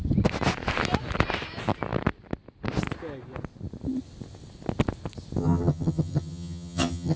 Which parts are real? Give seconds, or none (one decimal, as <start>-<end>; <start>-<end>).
0.0-5.4